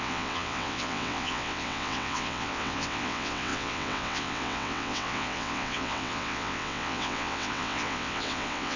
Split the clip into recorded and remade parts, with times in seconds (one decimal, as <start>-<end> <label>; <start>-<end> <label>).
0.0-8.8 remade